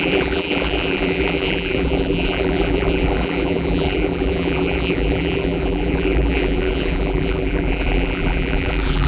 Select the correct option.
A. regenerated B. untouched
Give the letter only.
A